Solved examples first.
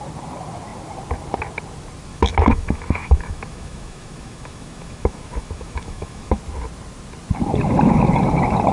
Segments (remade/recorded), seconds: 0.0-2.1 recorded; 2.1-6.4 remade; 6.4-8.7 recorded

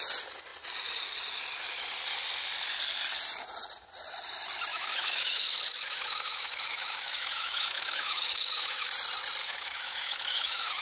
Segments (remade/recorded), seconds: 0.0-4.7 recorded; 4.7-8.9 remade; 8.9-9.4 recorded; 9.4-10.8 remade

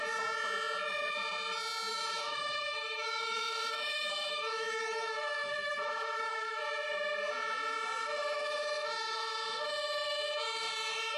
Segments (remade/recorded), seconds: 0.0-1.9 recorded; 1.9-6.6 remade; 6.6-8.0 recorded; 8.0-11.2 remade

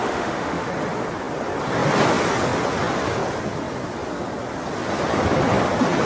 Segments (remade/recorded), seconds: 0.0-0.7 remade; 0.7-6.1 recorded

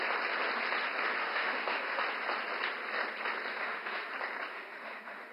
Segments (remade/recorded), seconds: 0.0-1.2 recorded; 1.2-2.0 remade; 2.0-3.5 recorded; 3.5-4.1 remade; 4.1-4.5 recorded; 4.5-5.3 remade